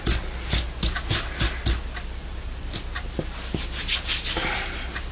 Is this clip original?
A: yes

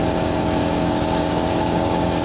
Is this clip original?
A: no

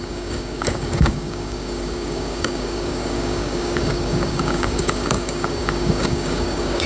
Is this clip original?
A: no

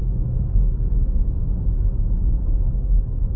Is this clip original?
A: no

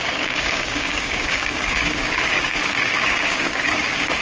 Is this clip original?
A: no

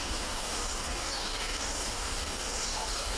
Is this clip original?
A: no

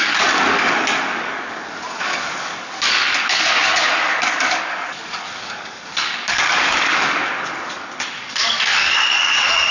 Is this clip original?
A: no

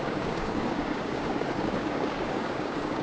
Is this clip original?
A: no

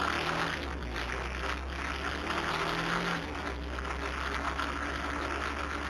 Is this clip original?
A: yes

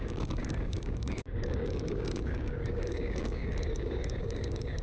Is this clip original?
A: no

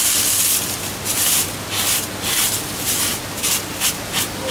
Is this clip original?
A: yes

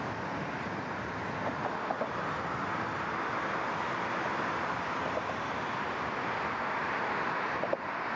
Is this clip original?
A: yes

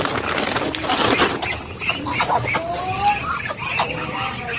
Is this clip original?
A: yes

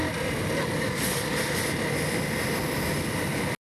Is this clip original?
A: yes